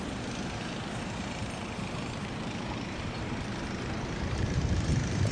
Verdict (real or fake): fake